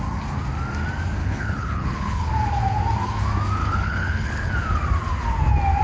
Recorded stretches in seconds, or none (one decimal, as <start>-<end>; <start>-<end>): 0.0-1.2; 2.3-3.6; 4.5-5.8